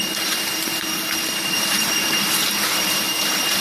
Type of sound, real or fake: fake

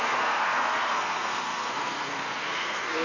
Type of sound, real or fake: fake